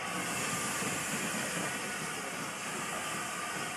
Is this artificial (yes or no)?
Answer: yes